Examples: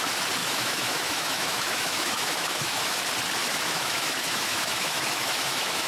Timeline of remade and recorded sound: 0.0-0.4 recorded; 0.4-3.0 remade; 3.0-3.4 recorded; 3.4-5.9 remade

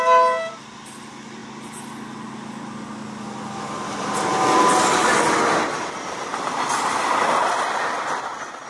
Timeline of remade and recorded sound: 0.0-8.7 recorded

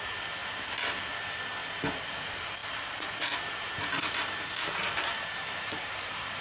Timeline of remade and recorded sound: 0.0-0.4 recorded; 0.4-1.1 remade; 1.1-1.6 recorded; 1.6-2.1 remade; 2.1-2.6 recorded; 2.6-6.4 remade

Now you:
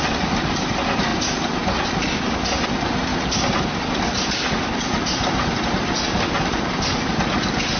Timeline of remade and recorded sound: 0.0-7.8 recorded

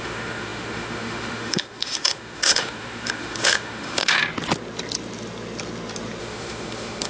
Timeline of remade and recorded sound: 0.0-4.2 remade; 4.2-6.2 recorded; 6.2-7.1 remade

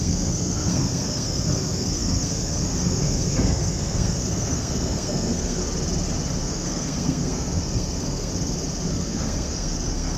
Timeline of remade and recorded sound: 0.0-5.6 remade; 5.6-6.4 recorded; 6.4-8.3 remade; 8.3-8.9 recorded; 8.9-10.2 remade

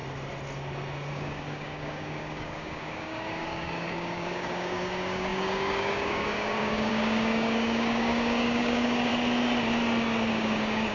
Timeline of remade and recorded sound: 0.0-1.1 recorded; 1.1-9.1 remade; 9.1-10.3 recorded; 10.3-10.9 remade

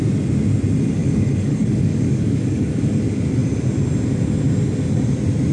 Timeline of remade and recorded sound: 0.0-1.0 recorded; 1.0-2.9 remade; 2.9-5.5 recorded